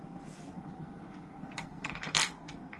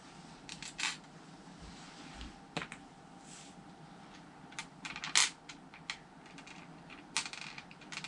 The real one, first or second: second